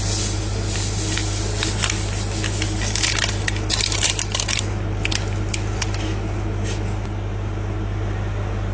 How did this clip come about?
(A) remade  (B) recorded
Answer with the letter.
B